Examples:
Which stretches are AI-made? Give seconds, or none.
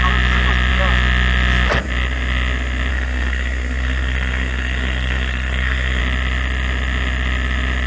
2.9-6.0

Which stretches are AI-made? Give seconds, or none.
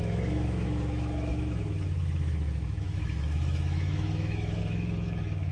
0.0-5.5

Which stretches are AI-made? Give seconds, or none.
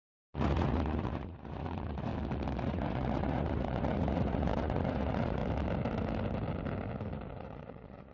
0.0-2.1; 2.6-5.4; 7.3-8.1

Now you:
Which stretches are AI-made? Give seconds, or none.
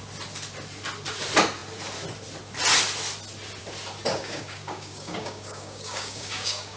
4.1-6.8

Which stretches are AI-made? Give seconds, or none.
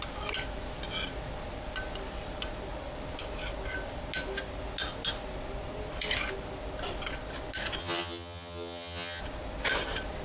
7.8-9.2